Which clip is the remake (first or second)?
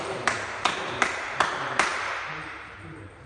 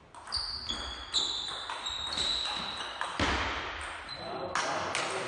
first